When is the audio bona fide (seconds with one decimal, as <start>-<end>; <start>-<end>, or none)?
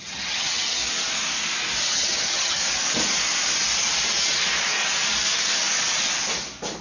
0.8-1.9; 2.6-6.8